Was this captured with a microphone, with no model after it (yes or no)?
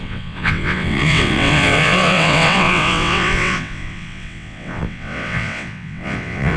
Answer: no